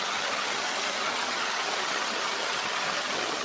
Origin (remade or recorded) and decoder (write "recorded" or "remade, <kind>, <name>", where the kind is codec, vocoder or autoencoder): remade, vocoder, HiFi-GAN